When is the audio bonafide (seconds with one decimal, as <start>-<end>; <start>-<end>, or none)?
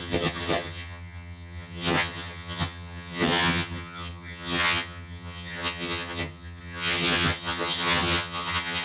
none